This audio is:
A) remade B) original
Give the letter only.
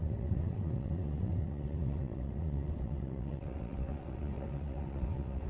A